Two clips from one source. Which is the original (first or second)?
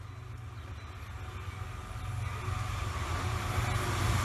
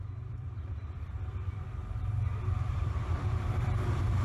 first